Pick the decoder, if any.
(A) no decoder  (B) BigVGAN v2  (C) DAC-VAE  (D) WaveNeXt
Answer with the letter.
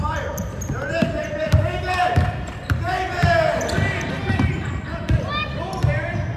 B